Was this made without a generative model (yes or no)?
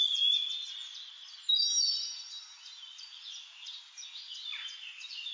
yes